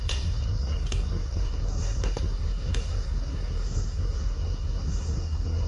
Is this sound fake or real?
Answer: fake